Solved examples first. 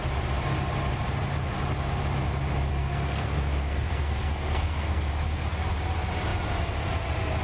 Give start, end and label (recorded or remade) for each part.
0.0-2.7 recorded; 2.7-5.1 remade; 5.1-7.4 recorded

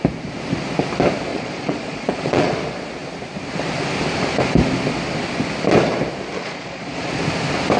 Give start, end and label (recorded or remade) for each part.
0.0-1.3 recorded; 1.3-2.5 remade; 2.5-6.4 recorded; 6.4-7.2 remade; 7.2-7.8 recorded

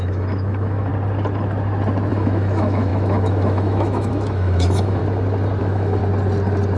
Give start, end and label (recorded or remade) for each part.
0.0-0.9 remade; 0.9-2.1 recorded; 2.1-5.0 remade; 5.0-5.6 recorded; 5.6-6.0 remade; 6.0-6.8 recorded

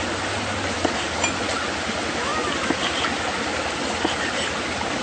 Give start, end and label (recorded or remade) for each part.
0.0-5.0 recorded